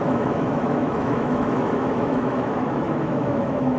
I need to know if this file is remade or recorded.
remade